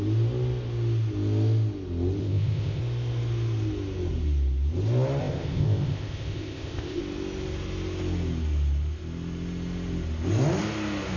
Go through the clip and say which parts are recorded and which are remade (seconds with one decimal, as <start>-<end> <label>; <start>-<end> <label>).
0.0-2.2 recorded; 2.2-2.8 remade; 2.8-5.2 recorded; 5.2-7.0 remade; 7.0-11.2 recorded